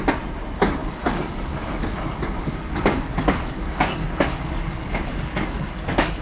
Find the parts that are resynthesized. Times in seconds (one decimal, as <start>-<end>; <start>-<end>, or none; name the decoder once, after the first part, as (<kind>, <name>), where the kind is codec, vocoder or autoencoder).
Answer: 0.8-2.0 (codec, DAC); 2.4-6.2